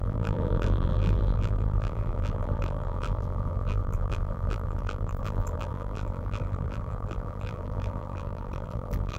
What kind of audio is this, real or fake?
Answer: fake